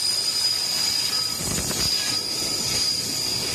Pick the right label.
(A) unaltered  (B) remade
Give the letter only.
A